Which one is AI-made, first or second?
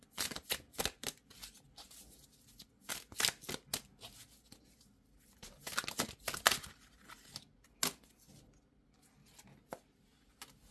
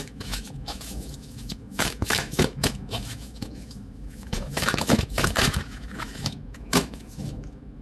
second